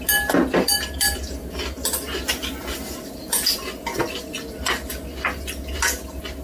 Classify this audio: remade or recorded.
recorded